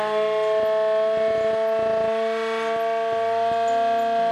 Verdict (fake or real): real